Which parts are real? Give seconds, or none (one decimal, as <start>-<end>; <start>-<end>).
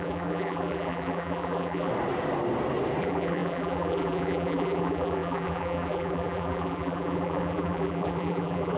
1.9-3.0